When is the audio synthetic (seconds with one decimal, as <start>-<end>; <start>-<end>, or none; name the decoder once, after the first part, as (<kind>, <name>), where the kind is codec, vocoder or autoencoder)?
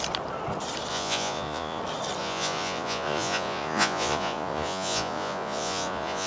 0.9-1.8 (vocoder, Vocos); 2.2-6.3